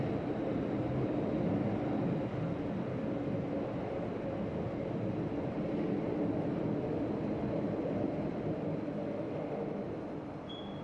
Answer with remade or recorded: recorded